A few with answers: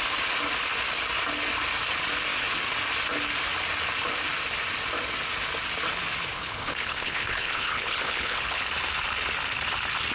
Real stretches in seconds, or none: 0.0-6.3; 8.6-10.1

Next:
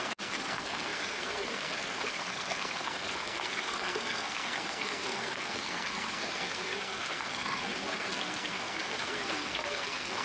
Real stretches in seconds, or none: none

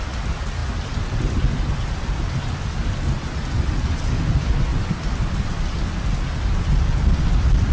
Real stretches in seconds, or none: 0.0-7.7

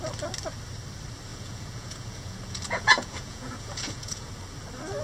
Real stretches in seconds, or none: 0.0-1.3; 4.3-5.0

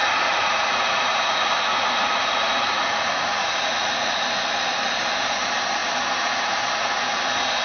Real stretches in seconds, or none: 4.4-7.6